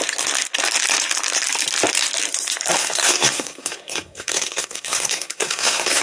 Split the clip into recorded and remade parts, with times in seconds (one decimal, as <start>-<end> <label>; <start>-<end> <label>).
0.0-2.8 recorded; 2.8-6.0 remade